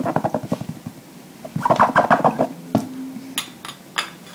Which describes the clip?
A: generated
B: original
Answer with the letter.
B